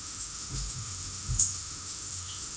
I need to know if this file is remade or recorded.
remade